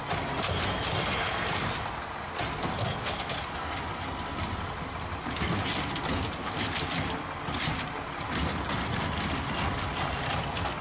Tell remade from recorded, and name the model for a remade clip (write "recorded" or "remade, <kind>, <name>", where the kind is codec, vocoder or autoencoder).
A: recorded